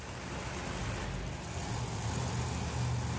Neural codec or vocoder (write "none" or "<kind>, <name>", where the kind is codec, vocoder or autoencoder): none